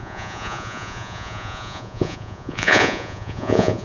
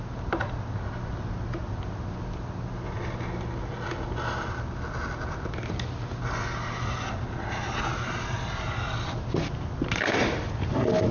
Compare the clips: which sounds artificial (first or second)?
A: first